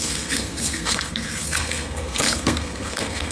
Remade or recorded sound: remade